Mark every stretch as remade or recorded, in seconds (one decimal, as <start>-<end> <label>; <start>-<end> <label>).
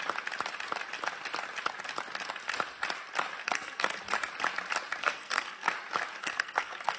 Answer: 0.0-3.4 recorded; 3.4-4.0 remade; 4.0-5.0 recorded; 5.0-5.7 remade; 5.7-6.2 recorded; 6.2-7.0 remade